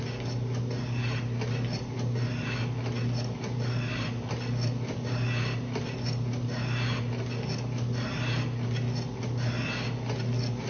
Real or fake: real